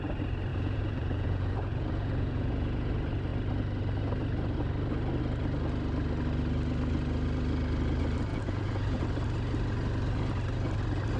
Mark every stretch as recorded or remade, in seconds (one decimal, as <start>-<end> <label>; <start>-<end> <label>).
0.0-0.5 recorded; 0.5-2.9 remade; 2.9-8.3 recorded; 8.3-9.0 remade; 9.0-11.2 recorded